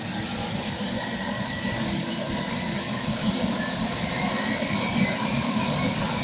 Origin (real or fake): fake